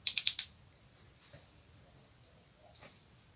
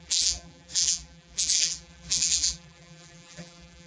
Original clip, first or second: first